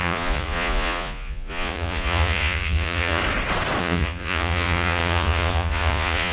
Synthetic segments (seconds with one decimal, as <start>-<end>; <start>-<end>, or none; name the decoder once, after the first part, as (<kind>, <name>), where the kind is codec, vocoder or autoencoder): 0.0-3.2 (vocoder, Vocos); 3.8-6.3